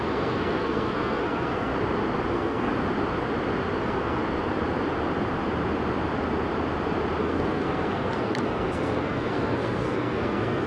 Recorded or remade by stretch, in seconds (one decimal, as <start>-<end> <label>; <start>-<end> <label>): 0.0-1.7 remade; 1.7-2.3 recorded; 2.3-2.7 remade; 2.7-3.8 recorded; 3.8-4.2 remade; 4.2-7.2 recorded; 7.2-10.7 remade